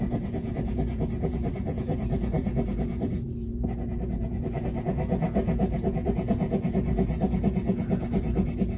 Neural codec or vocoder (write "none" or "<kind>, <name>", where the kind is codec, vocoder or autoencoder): vocoder, Vocos